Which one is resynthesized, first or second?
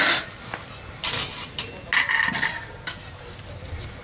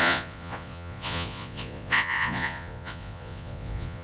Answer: second